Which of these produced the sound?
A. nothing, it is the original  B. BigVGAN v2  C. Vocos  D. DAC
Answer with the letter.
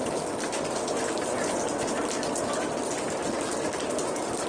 B